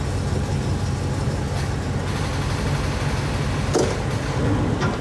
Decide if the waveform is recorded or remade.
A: recorded